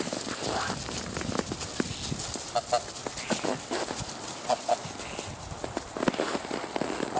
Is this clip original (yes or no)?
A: yes